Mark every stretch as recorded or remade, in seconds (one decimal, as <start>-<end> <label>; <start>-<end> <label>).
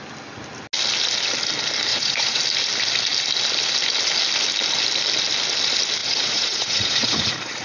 0.0-1.9 recorded; 1.9-2.4 remade; 2.4-6.0 recorded; 6.0-7.6 remade